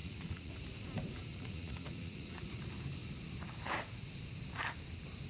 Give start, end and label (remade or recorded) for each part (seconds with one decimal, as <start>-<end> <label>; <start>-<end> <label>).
0.0-0.6 remade; 0.6-1.3 recorded; 1.3-2.6 remade; 2.6-5.3 recorded